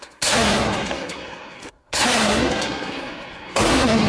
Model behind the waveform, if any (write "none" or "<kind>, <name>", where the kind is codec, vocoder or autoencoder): codec, SNAC